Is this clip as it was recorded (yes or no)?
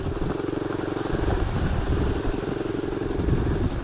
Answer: yes